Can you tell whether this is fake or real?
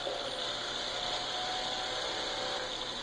real